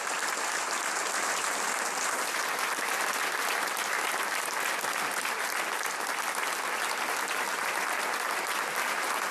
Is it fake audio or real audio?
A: real